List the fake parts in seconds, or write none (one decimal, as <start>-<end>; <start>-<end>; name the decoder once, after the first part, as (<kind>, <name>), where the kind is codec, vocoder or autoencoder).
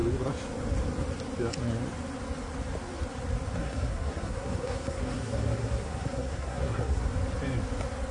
3.6-7.1 (codec, SNAC)